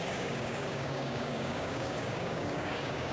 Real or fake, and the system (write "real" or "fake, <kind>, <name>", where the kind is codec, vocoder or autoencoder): fake, codec, DAC